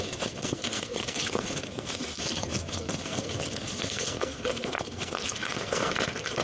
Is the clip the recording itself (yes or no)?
no